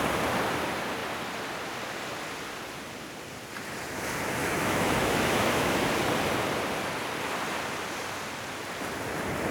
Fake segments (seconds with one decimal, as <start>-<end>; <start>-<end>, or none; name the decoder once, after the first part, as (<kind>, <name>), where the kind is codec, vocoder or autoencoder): 4.4-5.9 (autoencoder, DAC-VAE)